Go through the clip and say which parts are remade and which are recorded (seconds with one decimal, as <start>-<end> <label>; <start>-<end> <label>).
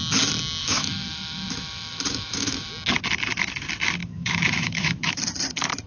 0.0-0.6 recorded; 0.6-2.7 remade; 2.7-4.0 recorded; 4.0-5.2 remade; 5.2-5.9 recorded